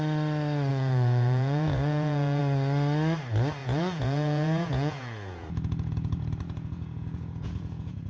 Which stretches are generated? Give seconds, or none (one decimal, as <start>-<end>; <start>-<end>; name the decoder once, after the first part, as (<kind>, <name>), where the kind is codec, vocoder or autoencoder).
0.7-2.4 (vocoder, Vocos); 3.6-8.1